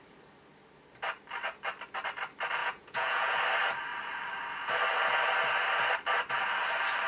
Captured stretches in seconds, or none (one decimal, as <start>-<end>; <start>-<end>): 0.0-2.6; 3.4-7.1